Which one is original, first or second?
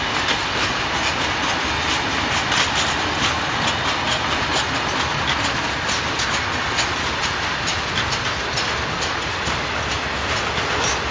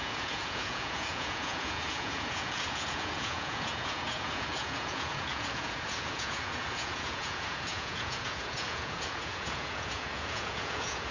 first